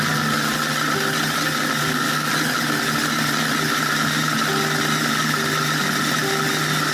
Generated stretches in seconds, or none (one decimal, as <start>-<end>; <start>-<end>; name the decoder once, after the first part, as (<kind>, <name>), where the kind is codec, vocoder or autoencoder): 1.8-2.3 (codec, SNAC)